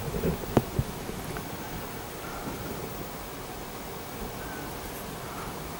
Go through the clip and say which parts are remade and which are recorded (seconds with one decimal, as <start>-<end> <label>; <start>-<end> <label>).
0.0-5.8 recorded